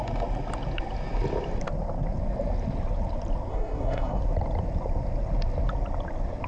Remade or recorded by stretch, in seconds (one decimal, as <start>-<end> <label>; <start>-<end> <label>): 0.0-3.5 recorded; 3.5-4.2 remade; 4.2-6.5 recorded